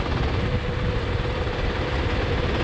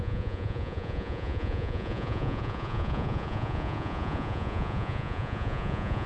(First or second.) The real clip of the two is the first